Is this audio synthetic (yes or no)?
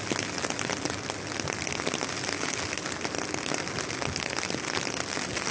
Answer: no